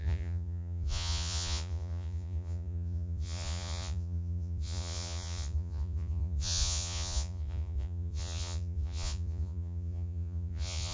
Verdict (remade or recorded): remade